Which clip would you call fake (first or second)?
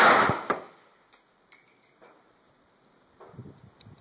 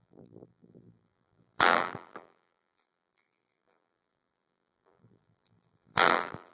second